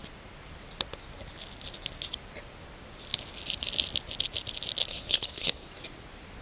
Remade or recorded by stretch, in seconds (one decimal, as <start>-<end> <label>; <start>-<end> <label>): 0.0-4.9 recorded; 4.9-5.7 remade; 5.7-6.4 recorded